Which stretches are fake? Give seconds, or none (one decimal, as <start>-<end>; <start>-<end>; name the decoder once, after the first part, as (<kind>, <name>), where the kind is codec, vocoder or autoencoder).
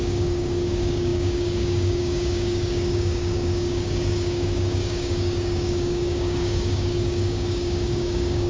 0.0-8.5 (codec, DAC)